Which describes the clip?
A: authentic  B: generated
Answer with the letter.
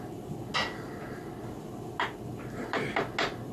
A